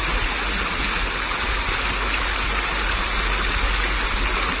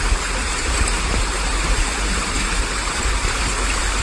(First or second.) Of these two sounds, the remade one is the second